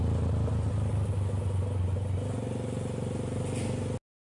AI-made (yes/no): no